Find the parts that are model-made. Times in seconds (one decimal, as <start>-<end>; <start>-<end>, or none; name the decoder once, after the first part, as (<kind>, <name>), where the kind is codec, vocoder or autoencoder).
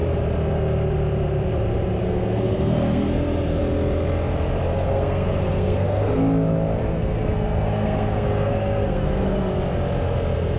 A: 2.0-3.6 (codec, SNAC); 4.7-6.2; 6.8-9.5